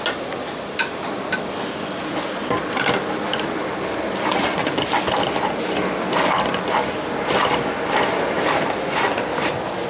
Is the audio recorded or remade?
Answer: recorded